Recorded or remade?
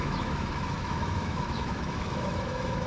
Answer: remade